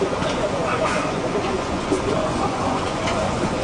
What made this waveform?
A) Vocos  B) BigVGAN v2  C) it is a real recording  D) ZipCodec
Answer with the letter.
A